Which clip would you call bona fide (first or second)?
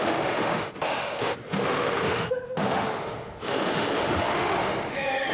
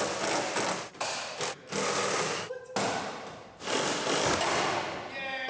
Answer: second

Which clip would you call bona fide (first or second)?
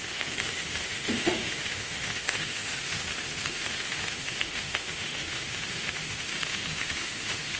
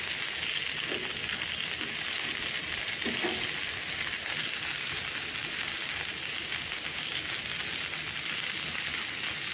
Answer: second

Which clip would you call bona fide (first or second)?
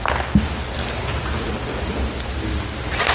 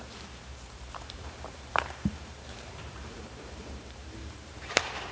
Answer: first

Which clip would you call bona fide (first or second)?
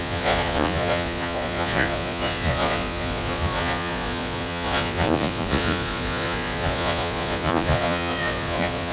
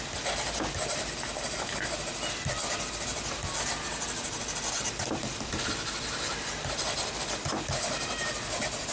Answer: second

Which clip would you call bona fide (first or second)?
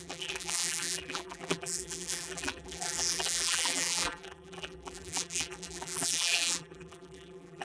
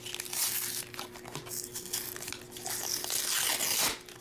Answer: second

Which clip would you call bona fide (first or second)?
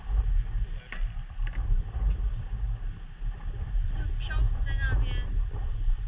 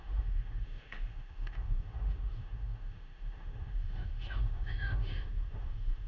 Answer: first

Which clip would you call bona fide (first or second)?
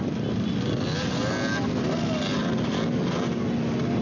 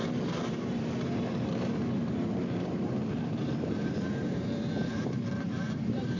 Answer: first